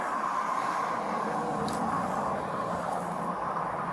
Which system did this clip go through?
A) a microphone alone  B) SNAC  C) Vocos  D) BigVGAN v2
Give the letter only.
A